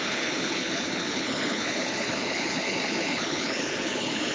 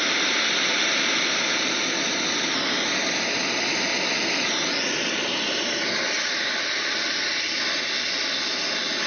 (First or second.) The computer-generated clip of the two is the first